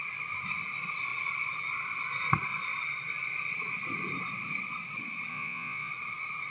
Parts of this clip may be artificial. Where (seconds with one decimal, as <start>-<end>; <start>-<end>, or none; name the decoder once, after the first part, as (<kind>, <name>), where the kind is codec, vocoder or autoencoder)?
5.3-5.9 (vocoder, Vocos)